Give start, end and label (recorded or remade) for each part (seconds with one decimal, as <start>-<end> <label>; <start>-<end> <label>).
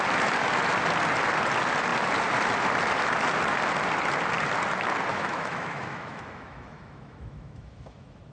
0.0-5.1 recorded; 5.1-8.3 remade